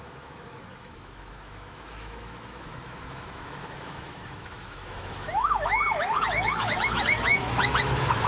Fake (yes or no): yes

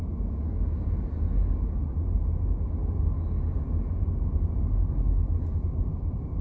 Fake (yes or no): no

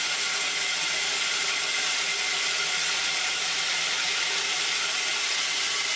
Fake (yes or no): no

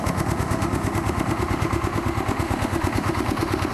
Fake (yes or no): yes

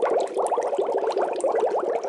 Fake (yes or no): no